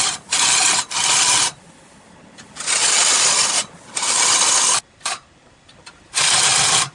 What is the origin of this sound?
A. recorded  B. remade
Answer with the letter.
A